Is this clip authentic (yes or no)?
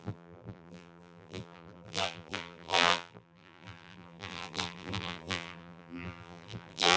no